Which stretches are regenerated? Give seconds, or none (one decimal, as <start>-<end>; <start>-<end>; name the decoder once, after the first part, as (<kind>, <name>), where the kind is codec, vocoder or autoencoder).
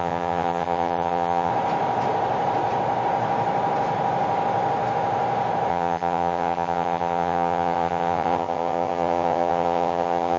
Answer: 0.0-1.5 (vocoder, HiFi-GAN); 5.7-10.4